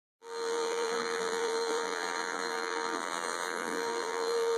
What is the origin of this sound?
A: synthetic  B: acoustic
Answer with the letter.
A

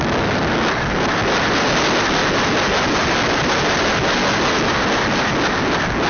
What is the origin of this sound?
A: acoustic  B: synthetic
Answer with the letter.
A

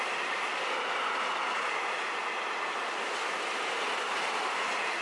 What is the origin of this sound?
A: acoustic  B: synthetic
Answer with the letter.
A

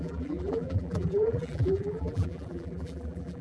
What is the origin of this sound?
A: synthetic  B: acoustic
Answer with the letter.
A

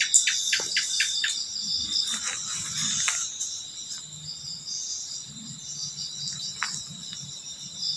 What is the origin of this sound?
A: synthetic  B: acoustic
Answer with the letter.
B